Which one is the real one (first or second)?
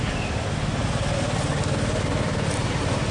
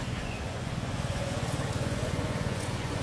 first